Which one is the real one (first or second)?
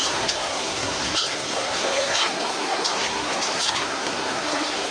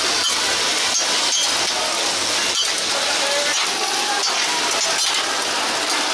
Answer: second